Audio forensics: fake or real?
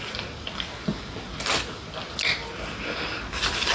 real